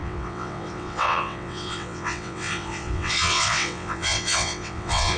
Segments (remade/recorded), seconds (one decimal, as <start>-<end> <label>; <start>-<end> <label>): 0.0-5.2 remade